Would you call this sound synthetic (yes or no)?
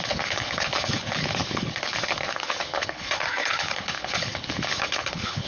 yes